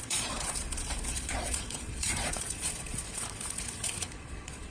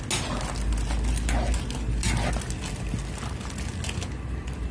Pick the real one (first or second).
second